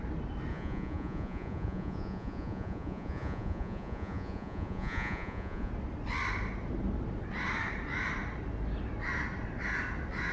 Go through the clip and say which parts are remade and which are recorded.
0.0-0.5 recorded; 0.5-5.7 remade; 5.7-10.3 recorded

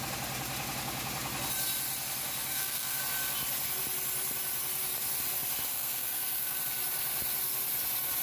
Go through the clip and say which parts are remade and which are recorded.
0.0-2.5 recorded; 2.5-3.0 remade; 3.0-5.7 recorded; 5.7-6.6 remade; 6.6-8.2 recorded

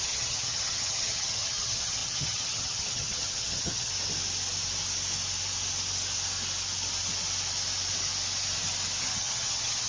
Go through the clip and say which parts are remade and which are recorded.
0.0-3.9 remade; 3.9-9.0 recorded; 9.0-9.9 remade

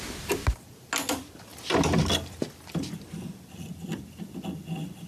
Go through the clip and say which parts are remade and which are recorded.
0.0-5.1 recorded

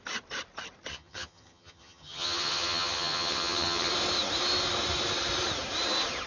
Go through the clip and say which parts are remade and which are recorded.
0.0-0.9 recorded; 0.9-3.9 remade; 3.9-6.3 recorded

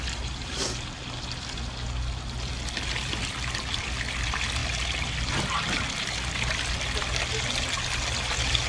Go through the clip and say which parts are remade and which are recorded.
0.0-8.7 recorded

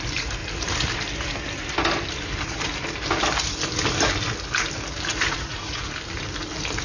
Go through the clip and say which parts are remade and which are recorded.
0.0-5.1 recorded; 5.1-5.8 remade; 5.8-6.8 recorded

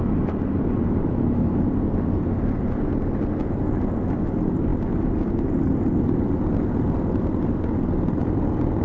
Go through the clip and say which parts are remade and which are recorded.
0.0-8.8 recorded